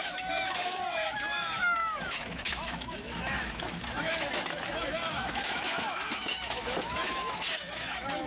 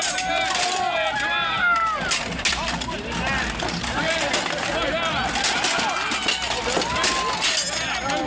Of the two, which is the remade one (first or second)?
first